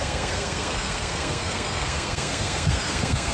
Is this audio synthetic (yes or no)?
yes